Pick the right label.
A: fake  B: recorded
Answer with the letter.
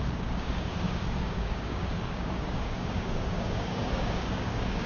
A